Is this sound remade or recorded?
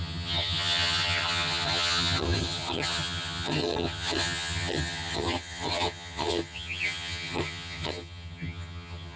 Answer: remade